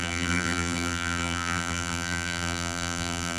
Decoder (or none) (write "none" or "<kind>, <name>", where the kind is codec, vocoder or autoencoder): vocoder, BigVGAN v2